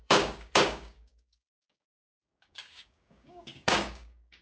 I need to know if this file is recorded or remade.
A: remade